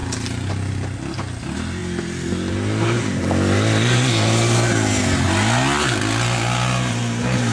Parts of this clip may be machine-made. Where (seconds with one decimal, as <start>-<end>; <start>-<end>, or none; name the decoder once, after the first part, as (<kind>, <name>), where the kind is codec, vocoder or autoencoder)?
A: none